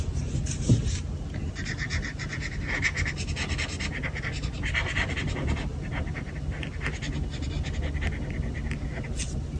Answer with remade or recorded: recorded